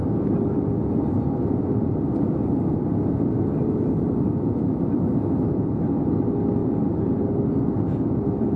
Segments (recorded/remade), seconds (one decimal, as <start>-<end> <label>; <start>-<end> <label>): 0.0-6.6 recorded; 6.6-7.2 remade; 7.2-8.6 recorded